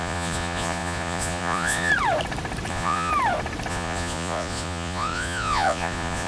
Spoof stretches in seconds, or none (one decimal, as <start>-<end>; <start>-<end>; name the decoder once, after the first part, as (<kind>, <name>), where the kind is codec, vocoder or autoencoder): 0.0-1.9 (vocoder, Vocos); 2.7-3.1; 3.7-6.3